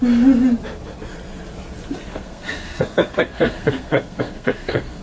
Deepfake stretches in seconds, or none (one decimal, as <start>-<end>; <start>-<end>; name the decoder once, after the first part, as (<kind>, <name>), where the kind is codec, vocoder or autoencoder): 2.1-5.0 (codec, SNAC)